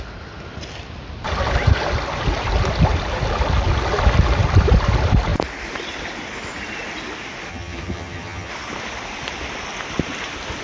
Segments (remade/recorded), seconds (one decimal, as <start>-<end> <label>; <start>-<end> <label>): 0.0-7.5 recorded; 7.5-8.5 remade; 8.5-10.6 recorded